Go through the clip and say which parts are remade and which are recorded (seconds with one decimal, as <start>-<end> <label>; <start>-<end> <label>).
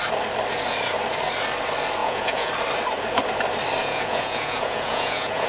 0.0-2.0 recorded; 2.0-2.5 remade; 2.5-3.8 recorded; 3.8-5.5 remade